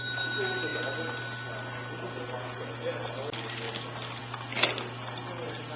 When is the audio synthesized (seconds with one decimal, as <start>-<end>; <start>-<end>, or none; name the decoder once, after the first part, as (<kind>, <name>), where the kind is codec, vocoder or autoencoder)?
none